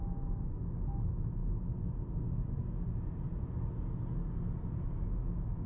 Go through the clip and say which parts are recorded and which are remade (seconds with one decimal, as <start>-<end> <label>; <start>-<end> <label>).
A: 0.0-1.4 remade; 1.4-4.8 recorded; 4.8-5.7 remade

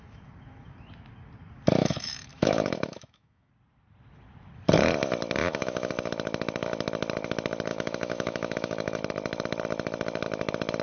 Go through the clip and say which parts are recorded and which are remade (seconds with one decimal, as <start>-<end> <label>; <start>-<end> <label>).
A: 0.0-1.8 recorded; 1.8-3.5 remade; 3.5-5.4 recorded; 5.4-5.9 remade; 5.9-7.7 recorded; 7.7-9.0 remade; 9.0-10.8 recorded

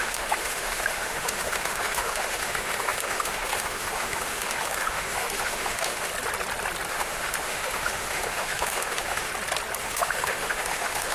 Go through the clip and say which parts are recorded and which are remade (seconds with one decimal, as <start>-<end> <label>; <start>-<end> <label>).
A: 0.0-6.1 remade; 6.1-6.9 recorded; 6.9-9.3 remade; 9.3-9.8 recorded; 9.8-11.1 remade

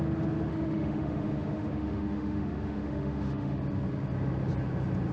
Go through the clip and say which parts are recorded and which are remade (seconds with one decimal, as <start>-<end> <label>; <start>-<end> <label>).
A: 0.0-0.5 recorded; 0.5-3.6 remade; 3.6-5.1 recorded

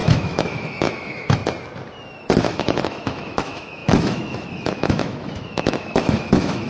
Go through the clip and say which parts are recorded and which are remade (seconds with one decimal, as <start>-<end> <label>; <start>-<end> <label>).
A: 0.0-1.4 remade; 1.4-2.5 recorded; 2.5-6.7 remade

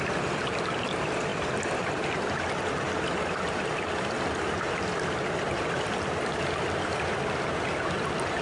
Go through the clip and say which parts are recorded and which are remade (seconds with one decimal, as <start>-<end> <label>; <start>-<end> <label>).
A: 0.0-8.4 recorded

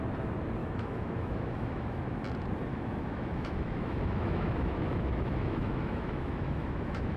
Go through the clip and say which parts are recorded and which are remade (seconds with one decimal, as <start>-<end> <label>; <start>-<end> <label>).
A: 0.0-0.6 recorded; 0.6-2.0 remade; 2.0-2.7 recorded; 2.7-7.2 remade

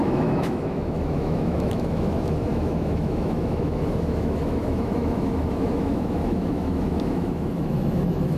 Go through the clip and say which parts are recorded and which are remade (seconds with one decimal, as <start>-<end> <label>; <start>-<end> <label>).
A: 0.0-8.4 remade